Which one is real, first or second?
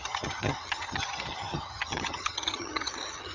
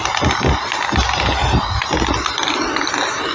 second